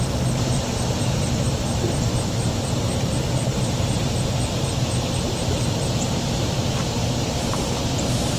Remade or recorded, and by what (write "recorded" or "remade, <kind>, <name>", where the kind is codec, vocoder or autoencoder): remade, vocoder, BigVGAN v2